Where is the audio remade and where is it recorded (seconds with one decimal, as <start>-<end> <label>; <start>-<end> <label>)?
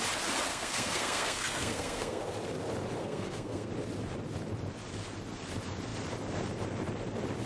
0.0-0.5 recorded; 0.5-2.2 remade; 2.2-3.0 recorded; 3.0-3.7 remade; 3.7-7.5 recorded